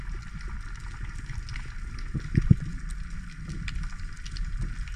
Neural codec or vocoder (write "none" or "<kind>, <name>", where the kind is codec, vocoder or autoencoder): none